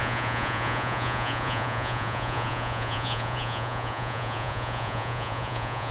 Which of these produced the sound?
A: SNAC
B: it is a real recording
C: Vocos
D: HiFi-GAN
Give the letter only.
C